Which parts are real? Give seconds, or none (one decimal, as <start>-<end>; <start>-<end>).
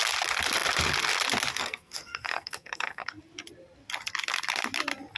0.0-1.5; 3.2-5.2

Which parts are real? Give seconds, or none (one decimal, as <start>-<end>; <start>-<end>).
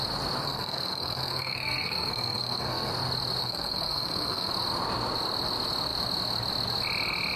0.0-0.4; 2.9-3.4; 4.5-7.4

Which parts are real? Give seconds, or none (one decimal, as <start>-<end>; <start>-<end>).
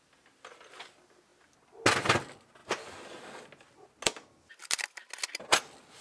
0.0-6.0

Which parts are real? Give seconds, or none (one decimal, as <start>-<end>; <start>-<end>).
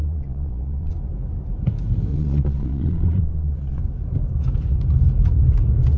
0.9-2.1; 3.8-6.0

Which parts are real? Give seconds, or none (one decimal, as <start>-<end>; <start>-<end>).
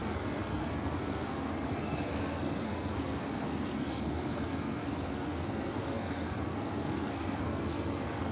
none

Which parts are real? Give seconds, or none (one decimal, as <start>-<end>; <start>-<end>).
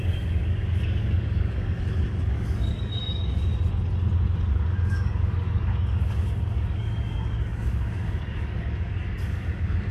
3.5-4.5